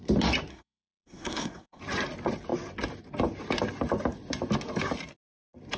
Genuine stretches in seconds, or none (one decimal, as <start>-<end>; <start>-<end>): 0.0-0.5; 1.8-5.8